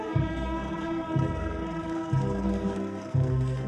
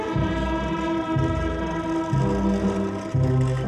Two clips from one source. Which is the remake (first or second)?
first